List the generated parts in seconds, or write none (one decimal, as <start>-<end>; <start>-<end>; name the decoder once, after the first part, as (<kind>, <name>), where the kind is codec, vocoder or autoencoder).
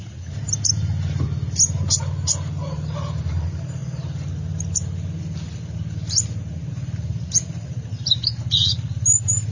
none